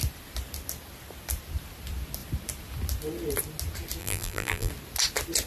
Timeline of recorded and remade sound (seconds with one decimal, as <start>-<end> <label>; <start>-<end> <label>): 0.0-4.0 recorded; 4.0-4.7 remade; 4.7-5.5 recorded